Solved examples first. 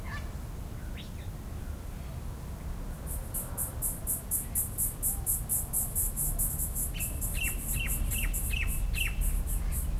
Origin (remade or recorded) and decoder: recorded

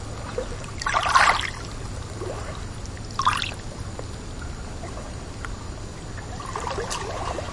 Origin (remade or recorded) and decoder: recorded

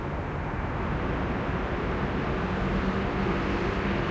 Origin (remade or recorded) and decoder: recorded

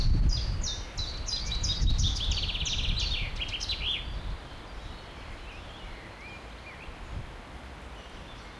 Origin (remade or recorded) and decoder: recorded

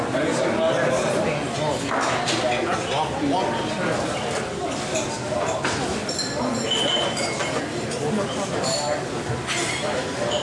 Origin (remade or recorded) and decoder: recorded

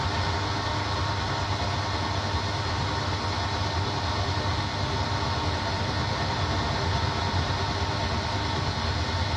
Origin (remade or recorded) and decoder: recorded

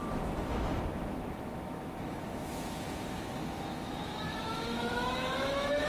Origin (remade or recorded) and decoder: remade, autoencoder, DAC-VAE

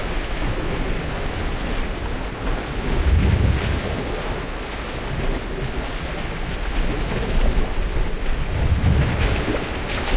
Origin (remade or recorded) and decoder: recorded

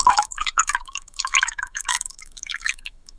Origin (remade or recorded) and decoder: remade, autoencoder, DAC-VAE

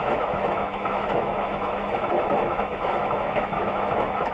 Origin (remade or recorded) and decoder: remade, autoencoder, DAC-VAE